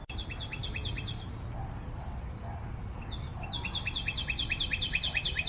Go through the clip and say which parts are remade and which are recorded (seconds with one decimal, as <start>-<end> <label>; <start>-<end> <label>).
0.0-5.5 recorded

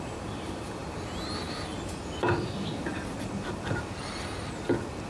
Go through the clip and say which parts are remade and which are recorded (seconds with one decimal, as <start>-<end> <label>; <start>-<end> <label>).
0.0-5.1 recorded

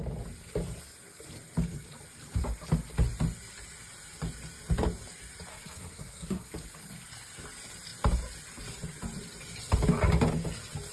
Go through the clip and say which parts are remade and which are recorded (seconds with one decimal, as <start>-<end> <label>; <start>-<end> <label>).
0.0-5.5 recorded; 5.5-6.5 remade; 6.5-10.9 recorded